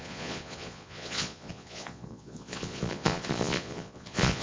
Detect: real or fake fake